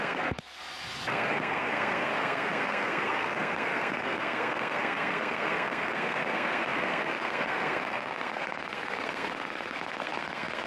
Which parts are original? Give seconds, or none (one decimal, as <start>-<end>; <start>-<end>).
0.6-1.1